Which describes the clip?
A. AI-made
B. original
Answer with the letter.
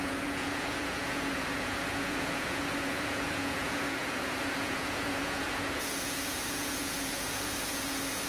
A